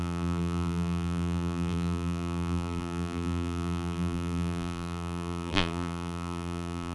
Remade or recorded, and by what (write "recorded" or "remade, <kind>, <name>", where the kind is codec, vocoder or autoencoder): remade, vocoder, BigVGAN v2